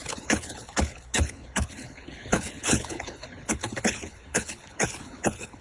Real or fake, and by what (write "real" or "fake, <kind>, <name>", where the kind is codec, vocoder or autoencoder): fake, codec, HILCodec